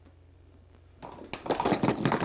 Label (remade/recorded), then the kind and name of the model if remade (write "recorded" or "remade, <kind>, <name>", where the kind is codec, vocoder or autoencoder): recorded